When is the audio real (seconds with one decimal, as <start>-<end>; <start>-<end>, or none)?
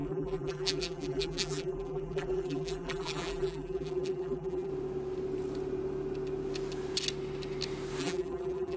4.7-8.0